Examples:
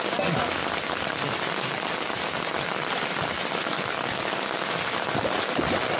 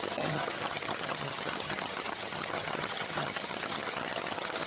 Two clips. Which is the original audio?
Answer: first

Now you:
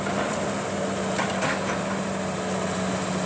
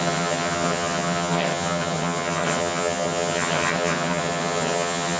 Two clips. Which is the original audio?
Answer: first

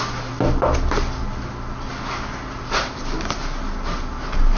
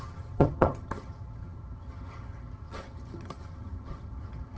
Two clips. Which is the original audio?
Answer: first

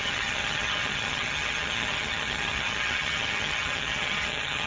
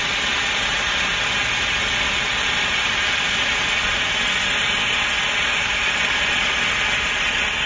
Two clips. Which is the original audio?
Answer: second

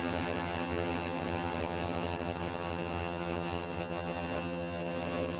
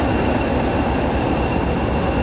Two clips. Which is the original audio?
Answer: second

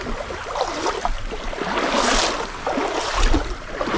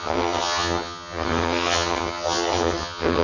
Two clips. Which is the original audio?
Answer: first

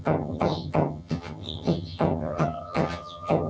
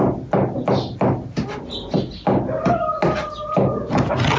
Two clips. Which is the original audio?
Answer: second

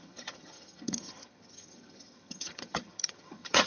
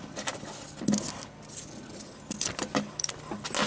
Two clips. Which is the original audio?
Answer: second